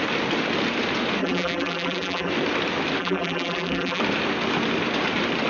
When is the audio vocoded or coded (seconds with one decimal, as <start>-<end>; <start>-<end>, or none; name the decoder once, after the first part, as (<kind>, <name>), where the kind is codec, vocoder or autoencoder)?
1.2-2.3 (vocoder, BigVGAN v2); 3.0-4.0